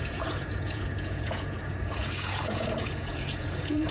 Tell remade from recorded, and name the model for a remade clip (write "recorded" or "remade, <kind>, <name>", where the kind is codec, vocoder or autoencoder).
remade, vocoder, Vocos